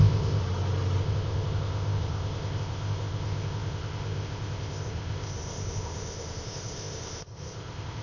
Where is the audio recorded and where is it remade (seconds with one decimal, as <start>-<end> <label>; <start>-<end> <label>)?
0.0-0.4 remade; 0.4-1.0 recorded; 1.0-8.0 remade